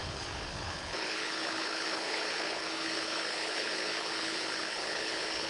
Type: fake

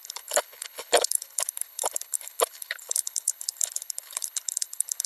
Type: fake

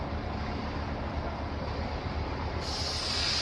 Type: real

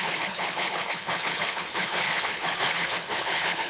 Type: fake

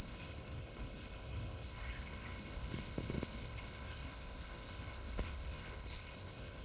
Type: fake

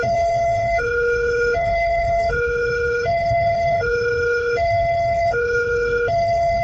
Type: fake